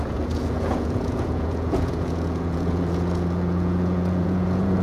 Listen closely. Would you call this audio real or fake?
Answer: fake